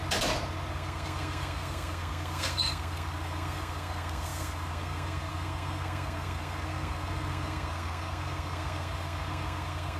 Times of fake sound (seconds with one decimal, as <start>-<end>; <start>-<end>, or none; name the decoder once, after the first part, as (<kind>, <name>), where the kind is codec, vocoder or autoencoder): 0.7-10.0 (codec, SNAC)